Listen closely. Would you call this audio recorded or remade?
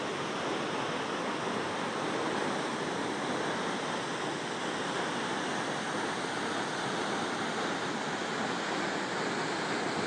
recorded